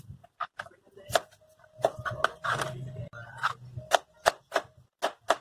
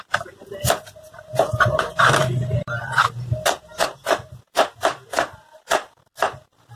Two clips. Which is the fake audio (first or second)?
second